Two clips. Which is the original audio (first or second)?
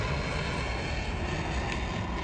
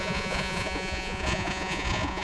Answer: first